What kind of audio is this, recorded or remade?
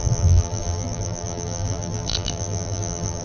remade